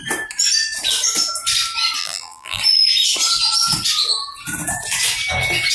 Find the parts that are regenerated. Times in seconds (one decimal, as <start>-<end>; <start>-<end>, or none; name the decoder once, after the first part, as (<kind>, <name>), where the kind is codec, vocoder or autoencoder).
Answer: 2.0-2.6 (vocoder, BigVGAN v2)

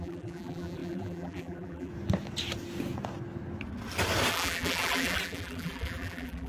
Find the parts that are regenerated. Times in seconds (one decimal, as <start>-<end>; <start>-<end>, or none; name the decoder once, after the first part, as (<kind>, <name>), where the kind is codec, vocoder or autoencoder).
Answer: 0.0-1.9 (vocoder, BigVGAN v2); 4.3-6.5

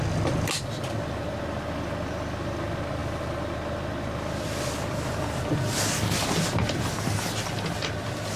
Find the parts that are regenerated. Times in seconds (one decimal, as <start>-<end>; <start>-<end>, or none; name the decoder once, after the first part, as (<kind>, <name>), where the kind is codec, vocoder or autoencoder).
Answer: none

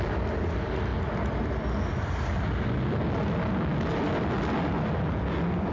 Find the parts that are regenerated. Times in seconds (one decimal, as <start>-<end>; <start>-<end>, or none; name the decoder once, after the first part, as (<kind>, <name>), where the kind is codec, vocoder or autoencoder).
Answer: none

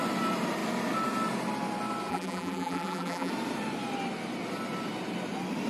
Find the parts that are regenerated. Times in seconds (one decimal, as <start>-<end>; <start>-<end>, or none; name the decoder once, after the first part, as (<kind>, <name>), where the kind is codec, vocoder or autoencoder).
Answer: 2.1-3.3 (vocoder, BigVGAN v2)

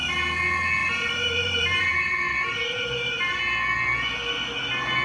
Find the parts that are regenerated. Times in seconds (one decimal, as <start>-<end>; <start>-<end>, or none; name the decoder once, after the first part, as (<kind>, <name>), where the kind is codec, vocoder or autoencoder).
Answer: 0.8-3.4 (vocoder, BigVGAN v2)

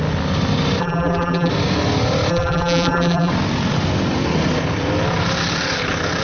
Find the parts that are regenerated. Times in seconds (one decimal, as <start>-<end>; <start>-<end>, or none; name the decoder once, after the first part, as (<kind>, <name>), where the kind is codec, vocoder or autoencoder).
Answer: 0.8-1.5 (vocoder, BigVGAN v2); 2.3-3.3

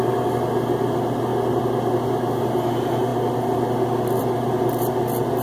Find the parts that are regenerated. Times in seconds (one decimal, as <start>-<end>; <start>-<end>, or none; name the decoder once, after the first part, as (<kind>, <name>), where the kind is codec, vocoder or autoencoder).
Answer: none